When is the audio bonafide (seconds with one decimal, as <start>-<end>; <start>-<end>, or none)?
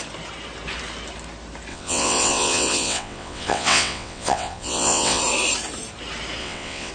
0.0-1.7; 5.2-6.4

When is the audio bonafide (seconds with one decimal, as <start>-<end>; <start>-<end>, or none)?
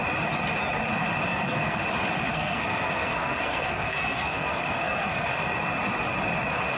0.0-1.3; 1.8-2.3; 5.3-6.8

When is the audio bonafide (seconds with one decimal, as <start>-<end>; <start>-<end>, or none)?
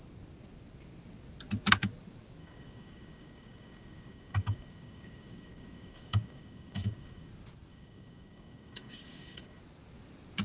0.0-2.4; 7.3-7.7; 9.6-10.4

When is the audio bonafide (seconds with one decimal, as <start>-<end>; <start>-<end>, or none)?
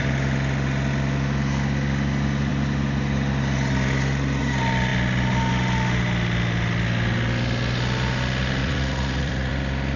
0.0-8.6; 9.5-10.0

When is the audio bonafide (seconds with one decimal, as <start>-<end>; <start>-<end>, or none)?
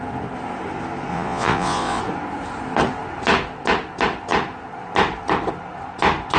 0.0-1.1; 2.0-6.4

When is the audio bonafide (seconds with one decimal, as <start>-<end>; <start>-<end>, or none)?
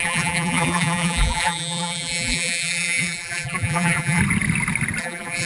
4.2-5.0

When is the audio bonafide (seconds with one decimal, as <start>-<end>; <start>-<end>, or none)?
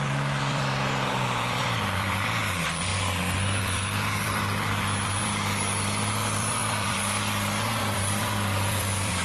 2.9-3.6